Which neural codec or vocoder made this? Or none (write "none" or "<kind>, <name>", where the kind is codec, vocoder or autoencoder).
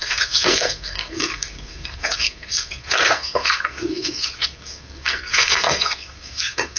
codec, SNAC